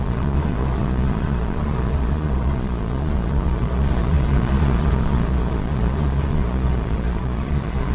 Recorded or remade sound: remade